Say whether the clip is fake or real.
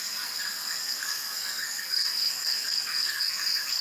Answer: fake